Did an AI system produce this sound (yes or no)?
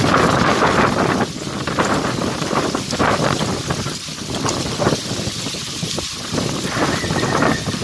no